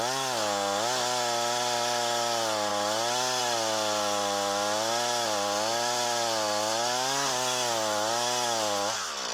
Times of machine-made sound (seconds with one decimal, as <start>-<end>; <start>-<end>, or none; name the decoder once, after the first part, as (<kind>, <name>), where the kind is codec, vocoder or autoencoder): none